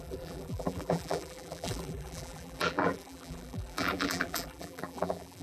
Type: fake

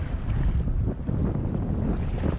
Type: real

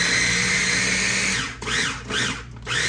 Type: real